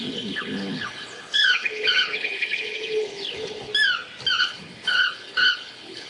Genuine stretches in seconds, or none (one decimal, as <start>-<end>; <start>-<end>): 3.7-4.4